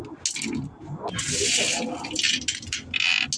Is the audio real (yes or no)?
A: yes